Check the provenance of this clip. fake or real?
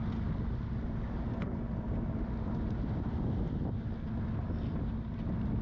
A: real